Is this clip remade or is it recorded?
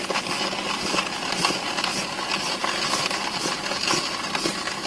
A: recorded